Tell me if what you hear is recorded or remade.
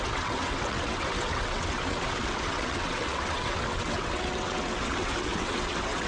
remade